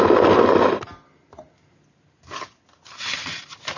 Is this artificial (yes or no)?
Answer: no